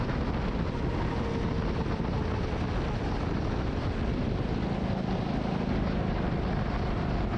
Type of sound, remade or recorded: recorded